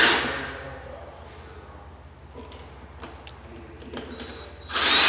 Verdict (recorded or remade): recorded